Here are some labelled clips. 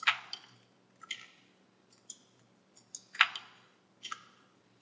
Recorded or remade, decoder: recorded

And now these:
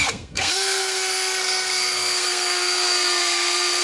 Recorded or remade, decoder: remade, codec, SNAC